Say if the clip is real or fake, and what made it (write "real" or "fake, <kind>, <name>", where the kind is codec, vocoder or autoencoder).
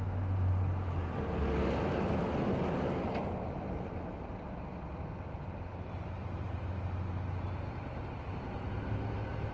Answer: real